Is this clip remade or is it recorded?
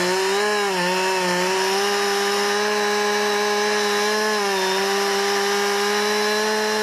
recorded